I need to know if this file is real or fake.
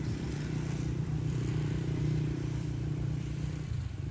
fake